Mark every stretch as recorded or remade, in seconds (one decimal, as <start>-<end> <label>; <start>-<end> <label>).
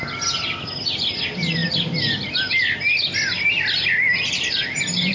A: 0.0-5.1 recorded